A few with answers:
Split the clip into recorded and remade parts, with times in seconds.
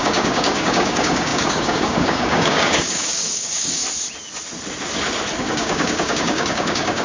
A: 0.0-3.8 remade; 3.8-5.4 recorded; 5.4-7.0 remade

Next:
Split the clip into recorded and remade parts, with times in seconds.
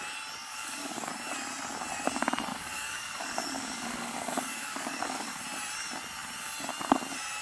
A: 0.0-0.4 recorded; 0.4-1.1 remade; 1.1-2.5 recorded; 2.5-5.3 remade; 5.3-7.4 recorded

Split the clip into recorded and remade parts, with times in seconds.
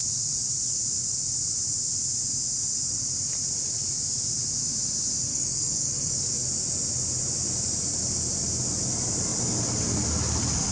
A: 0.0-5.3 recorded; 5.3-6.2 remade; 6.2-10.7 recorded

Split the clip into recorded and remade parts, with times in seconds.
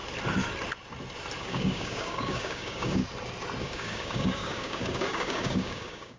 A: 0.0-1.4 recorded; 1.4-3.0 remade; 3.0-3.6 recorded; 3.6-6.2 remade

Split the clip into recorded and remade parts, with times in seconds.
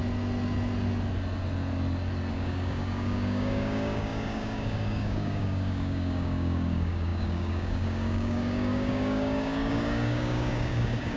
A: 0.0-2.3 recorded; 2.3-11.2 remade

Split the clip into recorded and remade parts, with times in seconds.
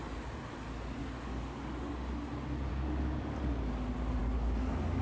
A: 0.0-1.0 recorded; 1.0-1.9 remade; 1.9-2.7 recorded; 2.7-3.6 remade; 3.6-4.2 recorded; 4.2-5.0 remade